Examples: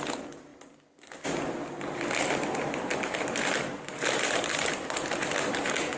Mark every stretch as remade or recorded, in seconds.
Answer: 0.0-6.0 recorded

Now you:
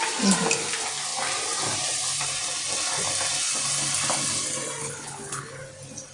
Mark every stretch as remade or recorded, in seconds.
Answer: 0.0-4.8 recorded; 4.8-5.6 remade; 5.6-6.1 recorded

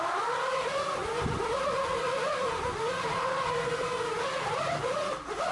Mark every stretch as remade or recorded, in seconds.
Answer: 0.0-5.5 recorded

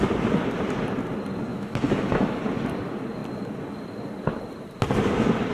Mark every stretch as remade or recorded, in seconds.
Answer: 0.0-1.5 recorded; 1.5-2.4 remade; 2.4-5.5 recorded

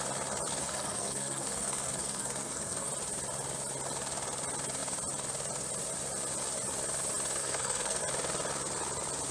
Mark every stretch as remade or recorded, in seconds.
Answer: 0.0-0.6 recorded; 0.6-2.9 remade; 2.9-7.4 recorded; 7.4-8.0 remade; 8.0-9.3 recorded

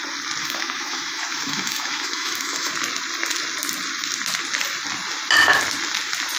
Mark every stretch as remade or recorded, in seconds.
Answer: 0.0-0.4 recorded; 0.4-2.7 remade; 2.7-6.4 recorded